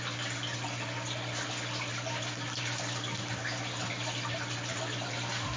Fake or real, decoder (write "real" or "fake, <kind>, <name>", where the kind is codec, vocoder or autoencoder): real